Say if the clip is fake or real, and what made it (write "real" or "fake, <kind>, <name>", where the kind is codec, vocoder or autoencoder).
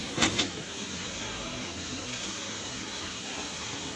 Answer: fake, codec, SNAC